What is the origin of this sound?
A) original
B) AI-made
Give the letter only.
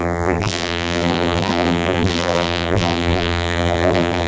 B